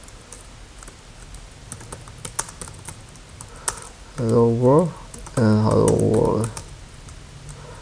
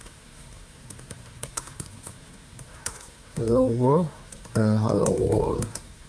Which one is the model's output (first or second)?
second